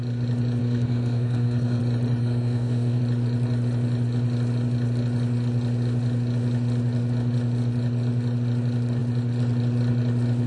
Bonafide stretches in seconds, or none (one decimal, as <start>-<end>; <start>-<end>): 0.0-0.6; 1.8-2.2; 3.0-10.5